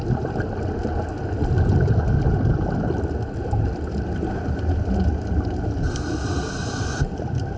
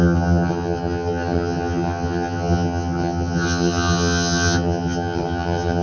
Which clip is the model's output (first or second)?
second